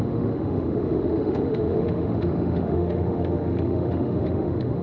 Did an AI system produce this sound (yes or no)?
yes